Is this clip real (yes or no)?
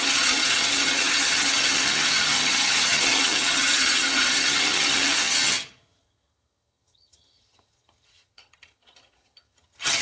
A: no